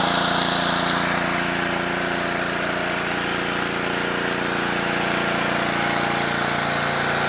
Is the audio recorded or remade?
recorded